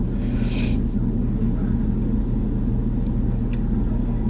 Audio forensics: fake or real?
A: real